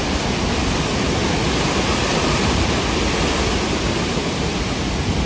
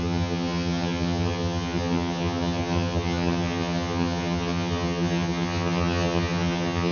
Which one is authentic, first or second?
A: first